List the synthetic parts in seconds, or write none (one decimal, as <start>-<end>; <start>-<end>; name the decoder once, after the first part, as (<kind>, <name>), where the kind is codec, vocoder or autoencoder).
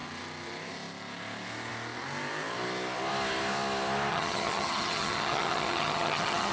4.1-6.5 (vocoder, HiFi-GAN)